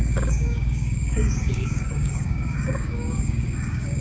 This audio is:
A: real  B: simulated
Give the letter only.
B